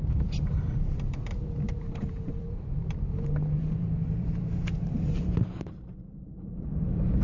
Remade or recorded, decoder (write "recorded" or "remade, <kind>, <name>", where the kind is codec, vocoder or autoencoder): remade, vocoder, BigVGAN v2